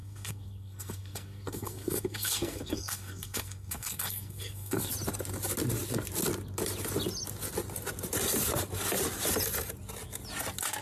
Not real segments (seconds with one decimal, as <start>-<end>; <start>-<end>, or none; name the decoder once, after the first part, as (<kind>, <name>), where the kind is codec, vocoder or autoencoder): 0.0-4.9 (codec, SNAC)